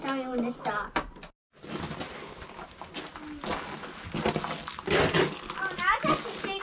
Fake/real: real